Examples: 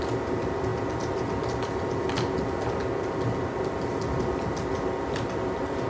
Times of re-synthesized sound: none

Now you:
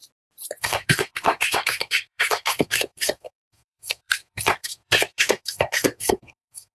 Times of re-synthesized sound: 0.6-6.7

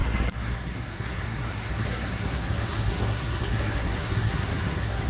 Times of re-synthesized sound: 0.0-5.1